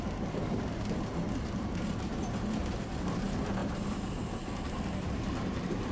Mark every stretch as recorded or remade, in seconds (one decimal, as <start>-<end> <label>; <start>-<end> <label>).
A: 0.0-0.4 remade; 0.4-2.0 recorded; 2.0-2.6 remade; 2.6-3.2 recorded; 3.2-3.6 remade; 3.6-5.0 recorded; 5.0-5.9 remade